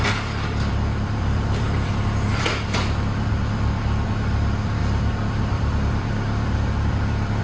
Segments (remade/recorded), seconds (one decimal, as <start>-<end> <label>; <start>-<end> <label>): 0.0-7.4 remade